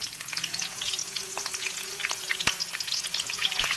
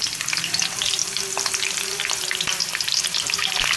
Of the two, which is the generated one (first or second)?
first